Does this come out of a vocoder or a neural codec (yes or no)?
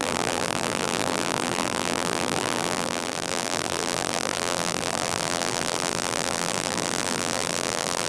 yes